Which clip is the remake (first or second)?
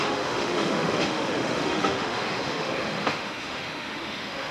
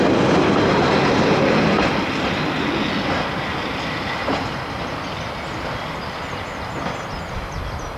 first